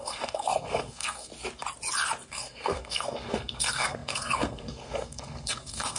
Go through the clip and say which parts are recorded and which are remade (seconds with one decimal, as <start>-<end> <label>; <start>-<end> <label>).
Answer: 0.0-1.3 remade; 1.3-2.3 recorded; 2.3-6.0 remade